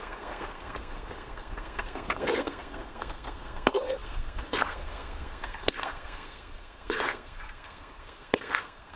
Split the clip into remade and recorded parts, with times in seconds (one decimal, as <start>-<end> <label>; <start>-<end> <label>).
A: 0.0-9.0 remade

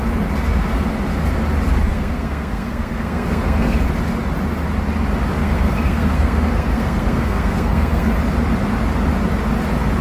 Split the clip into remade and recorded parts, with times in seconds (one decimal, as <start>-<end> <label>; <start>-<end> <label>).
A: 0.0-1.9 recorded; 1.9-3.8 remade; 3.8-5.4 recorded; 5.4-8.1 remade; 8.1-10.0 recorded

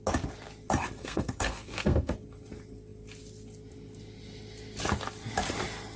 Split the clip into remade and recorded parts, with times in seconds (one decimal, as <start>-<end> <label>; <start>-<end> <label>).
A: 0.0-1.0 recorded; 1.0-2.1 remade; 2.1-6.0 recorded

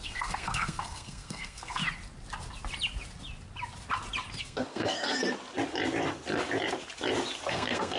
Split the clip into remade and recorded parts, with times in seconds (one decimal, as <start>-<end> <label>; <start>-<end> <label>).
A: 0.0-1.8 remade; 1.8-4.4 recorded; 4.4-5.2 remade; 5.2-7.5 recorded; 7.5-8.0 remade

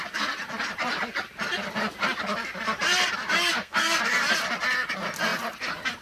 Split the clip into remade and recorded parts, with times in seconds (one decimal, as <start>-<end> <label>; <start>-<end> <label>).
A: 0.0-3.5 recorded; 3.5-4.0 remade; 4.0-6.0 recorded